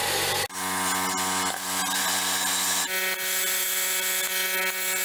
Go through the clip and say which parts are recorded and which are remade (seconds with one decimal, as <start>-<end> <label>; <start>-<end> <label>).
0.0-5.0 recorded